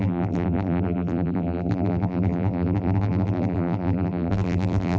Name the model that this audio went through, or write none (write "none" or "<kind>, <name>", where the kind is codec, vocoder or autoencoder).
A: vocoder, BigVGAN v2